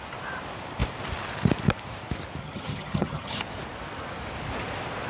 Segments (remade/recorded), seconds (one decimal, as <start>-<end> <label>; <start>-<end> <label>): 0.0-2.4 recorded; 2.4-3.4 remade; 3.4-5.1 recorded

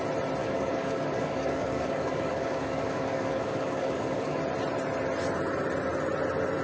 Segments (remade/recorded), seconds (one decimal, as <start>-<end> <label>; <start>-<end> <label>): 0.0-0.4 recorded; 0.4-4.4 remade; 4.4-6.6 recorded

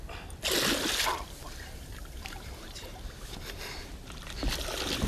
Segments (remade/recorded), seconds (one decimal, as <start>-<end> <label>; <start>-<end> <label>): 0.0-1.4 recorded; 1.4-4.5 remade; 4.5-5.1 recorded

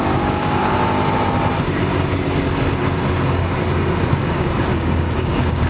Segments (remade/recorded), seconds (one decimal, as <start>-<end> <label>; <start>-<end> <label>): 0.0-0.7 remade; 0.7-4.1 recorded; 4.1-5.7 remade

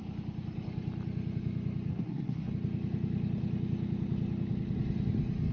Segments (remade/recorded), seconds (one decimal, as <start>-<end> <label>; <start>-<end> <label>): 0.0-1.9 recorded; 1.9-2.5 remade; 2.5-5.5 recorded

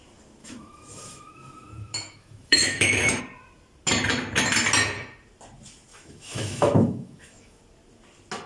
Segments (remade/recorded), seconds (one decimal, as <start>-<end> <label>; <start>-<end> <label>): 0.0-0.4 recorded; 0.4-3.2 remade; 3.2-5.9 recorded; 5.9-7.6 remade; 7.6-8.5 recorded

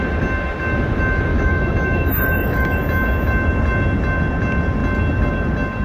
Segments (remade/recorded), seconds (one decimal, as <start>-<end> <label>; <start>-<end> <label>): 0.0-1.3 recorded; 1.3-2.8 remade; 2.8-5.8 recorded

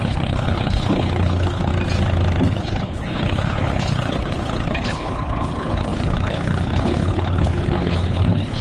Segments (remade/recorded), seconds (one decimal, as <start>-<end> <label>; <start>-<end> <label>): 0.0-1.7 remade; 1.7-2.5 recorded; 2.5-8.6 remade